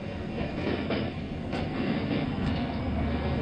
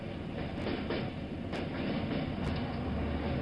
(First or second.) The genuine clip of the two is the second